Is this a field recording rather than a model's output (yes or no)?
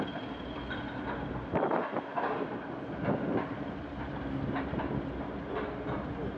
yes